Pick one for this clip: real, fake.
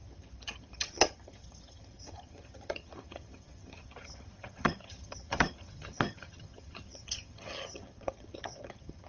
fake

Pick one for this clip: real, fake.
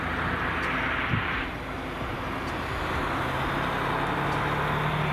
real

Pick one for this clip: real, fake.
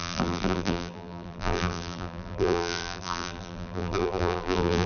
fake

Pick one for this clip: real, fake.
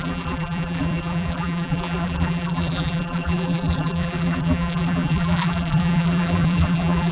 fake